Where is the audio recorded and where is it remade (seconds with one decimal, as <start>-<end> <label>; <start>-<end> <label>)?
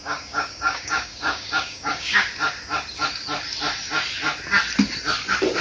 0.0-2.3 remade; 2.3-5.6 recorded